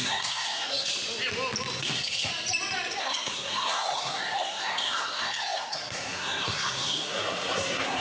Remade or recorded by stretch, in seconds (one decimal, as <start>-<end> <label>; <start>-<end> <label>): 0.0-0.9 remade; 0.9-1.8 recorded; 1.8-2.3 remade; 2.3-3.0 recorded; 3.0-8.0 remade